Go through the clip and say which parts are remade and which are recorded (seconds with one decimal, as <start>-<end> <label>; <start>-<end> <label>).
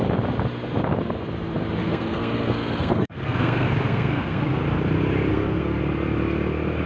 0.0-1.8 recorded; 1.8-4.4 remade; 4.4-5.3 recorded; 5.3-5.8 remade; 5.8-6.9 recorded